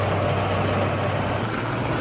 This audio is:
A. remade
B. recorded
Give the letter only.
B